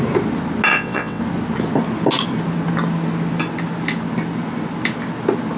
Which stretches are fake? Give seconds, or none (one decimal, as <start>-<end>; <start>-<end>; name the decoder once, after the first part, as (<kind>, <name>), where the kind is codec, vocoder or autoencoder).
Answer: 0.7-1.2 (vocoder, WaveNeXt)